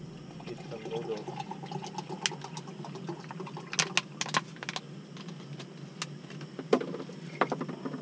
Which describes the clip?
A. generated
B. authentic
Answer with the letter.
B